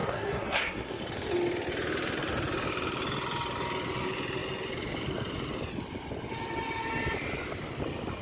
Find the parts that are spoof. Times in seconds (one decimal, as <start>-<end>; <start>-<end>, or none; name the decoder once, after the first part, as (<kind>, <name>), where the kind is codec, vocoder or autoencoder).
0.0-1.0 (codec, SNAC)